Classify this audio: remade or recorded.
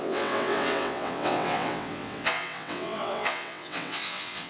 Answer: remade